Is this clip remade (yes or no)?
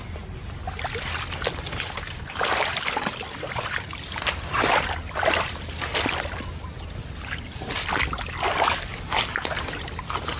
no